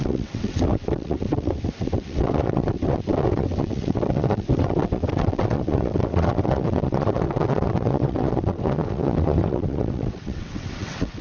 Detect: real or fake fake